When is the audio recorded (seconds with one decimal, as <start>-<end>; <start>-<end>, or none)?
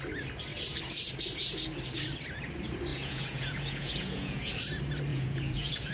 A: 0.0-2.9; 4.5-5.1